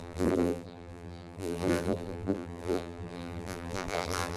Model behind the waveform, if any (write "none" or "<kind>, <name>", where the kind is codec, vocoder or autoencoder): vocoder, BigVGAN v2